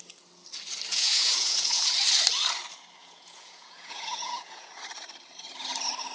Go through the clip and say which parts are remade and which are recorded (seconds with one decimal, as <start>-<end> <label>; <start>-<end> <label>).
0.0-0.9 recorded; 0.9-1.9 remade; 1.9-3.0 recorded; 3.0-4.7 remade; 4.7-6.1 recorded